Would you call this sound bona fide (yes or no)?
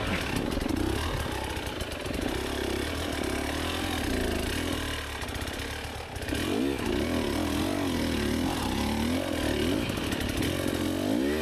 yes